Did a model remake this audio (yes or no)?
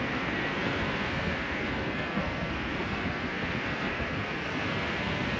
yes